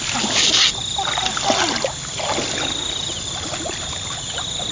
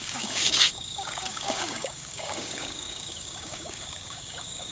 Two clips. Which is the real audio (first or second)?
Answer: first